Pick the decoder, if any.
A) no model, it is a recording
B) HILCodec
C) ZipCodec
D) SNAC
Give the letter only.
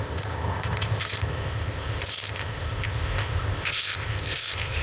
C